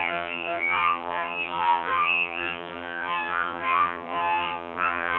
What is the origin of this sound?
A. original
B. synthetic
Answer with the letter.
B